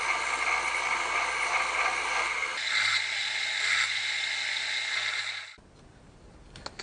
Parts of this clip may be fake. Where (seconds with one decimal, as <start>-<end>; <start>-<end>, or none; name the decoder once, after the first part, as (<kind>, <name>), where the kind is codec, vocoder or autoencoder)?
none